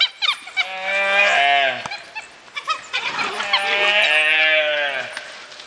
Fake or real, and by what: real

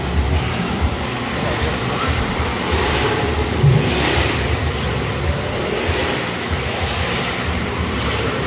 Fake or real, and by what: real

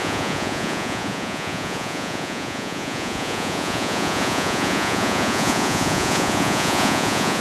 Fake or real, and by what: fake, vocoder, Vocos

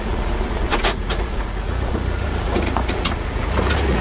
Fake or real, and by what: fake, vocoder, Vocos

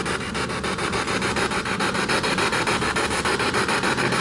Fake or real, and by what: real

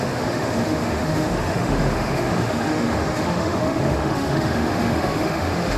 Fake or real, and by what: fake, autoencoder, DAC-VAE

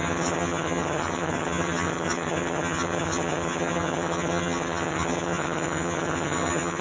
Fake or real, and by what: fake, vocoder, HiFi-GAN